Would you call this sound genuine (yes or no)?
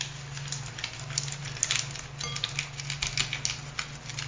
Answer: yes